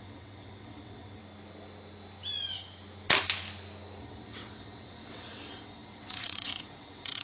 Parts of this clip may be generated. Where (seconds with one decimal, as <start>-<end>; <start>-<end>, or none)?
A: 0.0-1.2; 4.0-7.2